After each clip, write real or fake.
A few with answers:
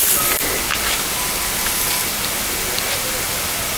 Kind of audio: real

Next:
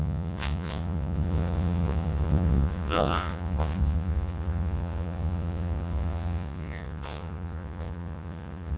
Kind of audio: fake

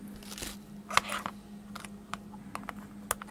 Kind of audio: real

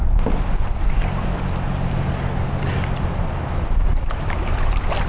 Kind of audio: real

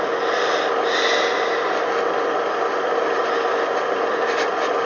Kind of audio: real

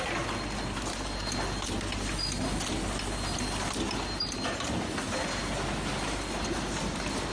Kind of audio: real